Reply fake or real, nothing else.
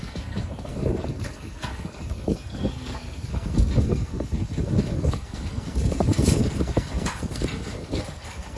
fake